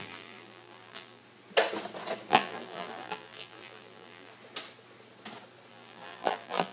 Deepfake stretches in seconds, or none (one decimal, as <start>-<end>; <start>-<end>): 0.0-1.2; 2.3-4.3; 5.7-6.7